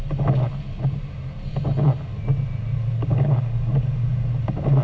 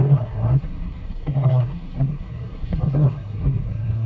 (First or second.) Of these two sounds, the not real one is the second